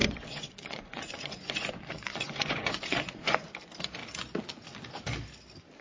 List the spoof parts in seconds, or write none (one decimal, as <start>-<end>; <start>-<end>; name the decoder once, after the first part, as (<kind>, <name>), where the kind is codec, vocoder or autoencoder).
0.0-3.5 (vocoder, Vocos)